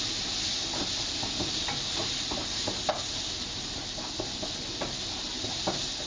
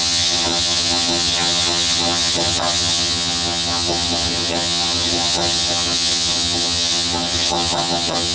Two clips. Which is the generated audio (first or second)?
second